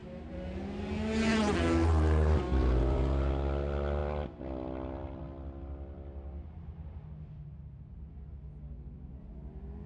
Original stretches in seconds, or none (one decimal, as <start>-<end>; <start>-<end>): 0.0-2.6; 3.3-9.9